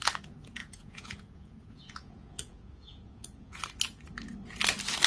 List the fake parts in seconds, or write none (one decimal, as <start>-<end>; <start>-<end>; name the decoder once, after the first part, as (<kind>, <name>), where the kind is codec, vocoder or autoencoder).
0.6-3.6 (vocoder, Vocos)